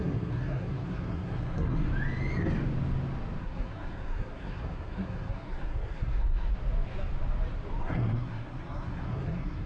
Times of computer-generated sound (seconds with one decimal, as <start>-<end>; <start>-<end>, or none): 0.0-1.9; 3.4-6.5; 7.8-9.7